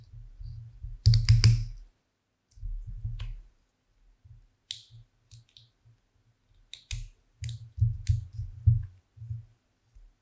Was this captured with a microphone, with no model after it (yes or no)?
yes